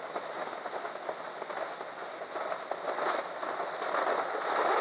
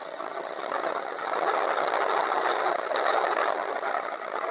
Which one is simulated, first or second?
second